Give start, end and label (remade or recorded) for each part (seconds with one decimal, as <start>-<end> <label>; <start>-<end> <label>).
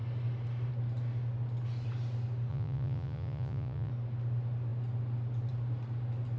0.0-2.5 recorded; 2.5-3.9 remade; 3.9-6.4 recorded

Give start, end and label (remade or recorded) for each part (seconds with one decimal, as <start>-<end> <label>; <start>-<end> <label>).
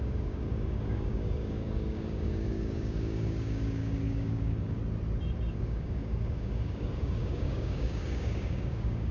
0.0-4.8 remade; 4.8-5.5 recorded; 5.5-9.1 remade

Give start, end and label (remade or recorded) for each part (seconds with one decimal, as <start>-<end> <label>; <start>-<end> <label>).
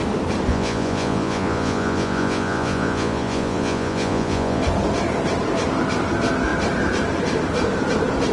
0.0-0.5 recorded; 0.5-4.6 remade; 4.6-8.3 recorded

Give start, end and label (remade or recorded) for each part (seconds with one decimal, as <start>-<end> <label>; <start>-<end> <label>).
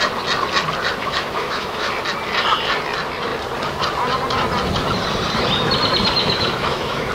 0.0-1.0 recorded; 1.0-1.9 remade; 1.9-6.2 recorded; 6.2-7.1 remade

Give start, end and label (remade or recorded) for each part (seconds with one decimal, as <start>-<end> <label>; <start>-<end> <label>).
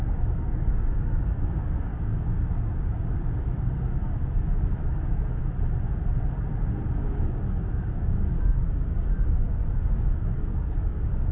0.0-5.4 remade; 5.4-6.9 recorded; 6.9-11.3 remade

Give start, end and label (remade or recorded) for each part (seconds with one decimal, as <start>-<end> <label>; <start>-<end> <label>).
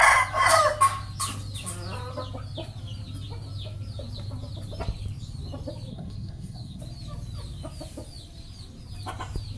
0.0-5.9 recorded; 5.9-6.8 remade; 6.8-9.6 recorded